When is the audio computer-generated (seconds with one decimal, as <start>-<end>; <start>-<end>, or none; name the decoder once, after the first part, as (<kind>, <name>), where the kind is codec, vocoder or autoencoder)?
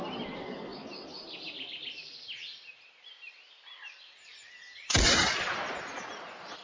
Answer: none